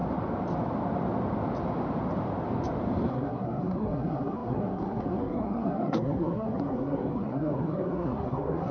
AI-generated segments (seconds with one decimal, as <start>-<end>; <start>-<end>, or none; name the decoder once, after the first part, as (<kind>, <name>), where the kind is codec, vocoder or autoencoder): 3.1-8.7 (codec, SNAC)